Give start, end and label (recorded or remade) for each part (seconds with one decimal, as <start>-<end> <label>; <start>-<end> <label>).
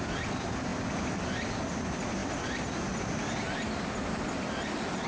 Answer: 0.0-5.1 recorded